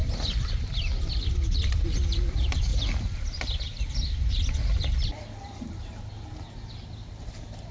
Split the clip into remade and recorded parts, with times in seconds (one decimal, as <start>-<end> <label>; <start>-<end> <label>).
0.0-2.7 recorded; 2.7-3.6 remade; 3.6-7.7 recorded